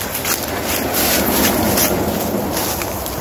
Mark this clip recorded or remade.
recorded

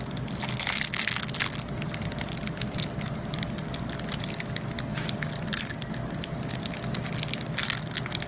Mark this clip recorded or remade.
recorded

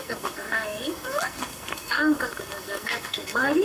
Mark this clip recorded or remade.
remade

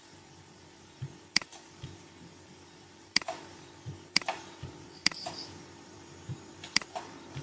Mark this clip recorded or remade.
remade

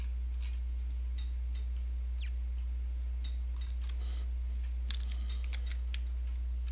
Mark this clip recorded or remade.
recorded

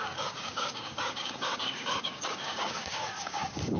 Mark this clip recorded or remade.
remade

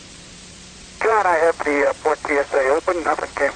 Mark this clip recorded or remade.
remade